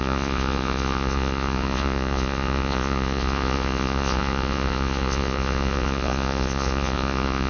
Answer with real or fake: fake